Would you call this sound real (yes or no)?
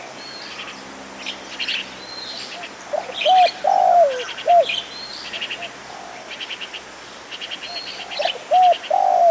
yes